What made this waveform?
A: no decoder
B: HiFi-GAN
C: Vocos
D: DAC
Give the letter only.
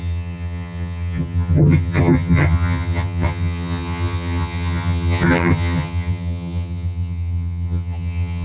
B